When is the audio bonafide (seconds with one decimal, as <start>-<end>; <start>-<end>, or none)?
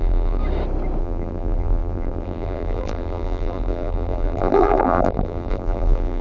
0.4-1.0